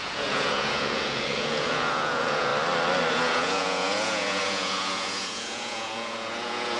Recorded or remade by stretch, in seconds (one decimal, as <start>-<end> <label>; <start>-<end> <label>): 0.0-2.5 remade; 2.5-3.1 recorded; 3.1-6.8 remade